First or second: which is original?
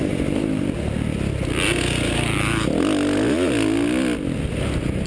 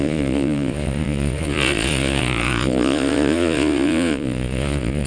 first